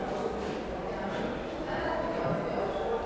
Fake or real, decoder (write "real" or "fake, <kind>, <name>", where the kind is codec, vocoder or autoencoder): real